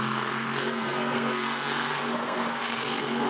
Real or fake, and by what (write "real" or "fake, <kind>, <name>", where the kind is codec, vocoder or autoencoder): fake, codec, SNAC